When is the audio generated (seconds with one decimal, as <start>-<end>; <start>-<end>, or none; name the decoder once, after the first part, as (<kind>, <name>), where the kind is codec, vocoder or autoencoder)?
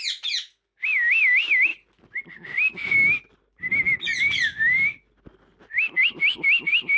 none